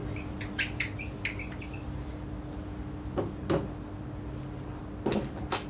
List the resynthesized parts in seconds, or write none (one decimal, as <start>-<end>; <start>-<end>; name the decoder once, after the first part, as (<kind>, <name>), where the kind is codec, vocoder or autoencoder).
none